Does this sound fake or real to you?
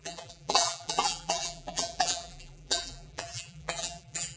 fake